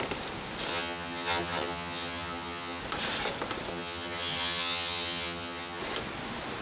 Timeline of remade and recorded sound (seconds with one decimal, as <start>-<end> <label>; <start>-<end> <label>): 0.0-0.7 recorded; 0.7-2.8 remade; 2.8-3.7 recorded; 3.7-5.8 remade; 5.8-6.6 recorded